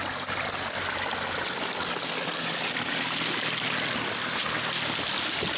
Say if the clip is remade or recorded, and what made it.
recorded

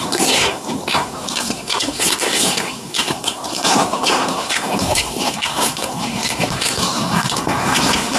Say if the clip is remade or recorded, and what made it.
remade, codec, SNAC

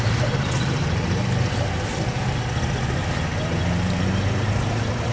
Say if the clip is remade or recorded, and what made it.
recorded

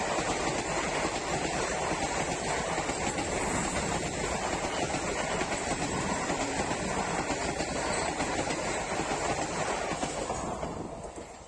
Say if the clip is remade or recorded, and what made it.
recorded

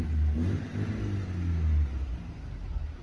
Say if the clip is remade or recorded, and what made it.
recorded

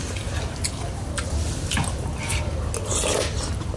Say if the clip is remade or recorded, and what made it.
recorded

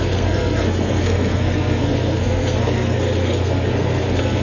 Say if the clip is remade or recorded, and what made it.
remade, codec, SNAC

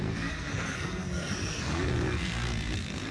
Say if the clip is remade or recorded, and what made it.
remade, codec, SNAC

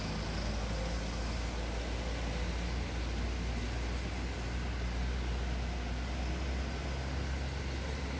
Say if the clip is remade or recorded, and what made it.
recorded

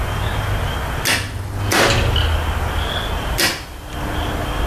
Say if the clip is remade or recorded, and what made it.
recorded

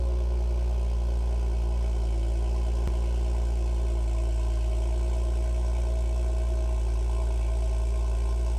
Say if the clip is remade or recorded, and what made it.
recorded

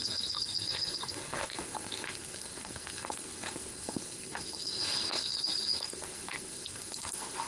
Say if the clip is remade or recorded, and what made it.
remade, codec, SNAC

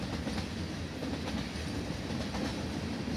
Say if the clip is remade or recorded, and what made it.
recorded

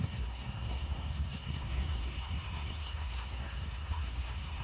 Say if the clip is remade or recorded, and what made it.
remade, codec, SNAC